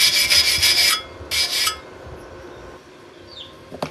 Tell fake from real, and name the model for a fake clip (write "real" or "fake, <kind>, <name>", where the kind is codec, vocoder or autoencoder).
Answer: real